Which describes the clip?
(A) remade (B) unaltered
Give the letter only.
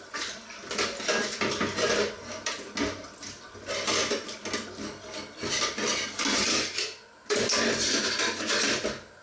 B